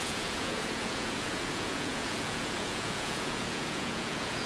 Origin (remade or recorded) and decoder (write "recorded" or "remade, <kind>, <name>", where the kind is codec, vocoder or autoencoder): remade, vocoder, Vocos